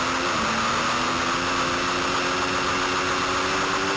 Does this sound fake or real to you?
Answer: real